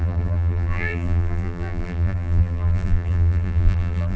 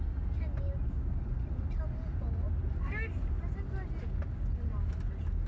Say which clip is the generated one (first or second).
first